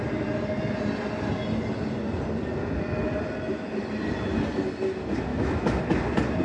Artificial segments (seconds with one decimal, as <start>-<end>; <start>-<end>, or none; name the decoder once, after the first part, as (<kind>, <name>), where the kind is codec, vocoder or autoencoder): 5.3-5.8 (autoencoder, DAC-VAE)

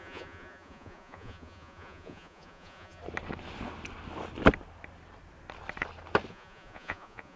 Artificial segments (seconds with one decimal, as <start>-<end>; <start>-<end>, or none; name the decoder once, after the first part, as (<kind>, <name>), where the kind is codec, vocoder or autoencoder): 0.0-3.0 (vocoder, Vocos); 6.3-7.4

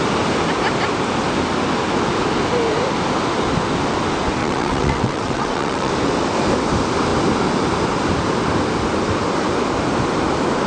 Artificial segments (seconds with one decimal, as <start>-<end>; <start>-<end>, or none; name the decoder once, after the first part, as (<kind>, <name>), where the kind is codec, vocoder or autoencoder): 4.4-5.9 (vocoder, WaveNeXt)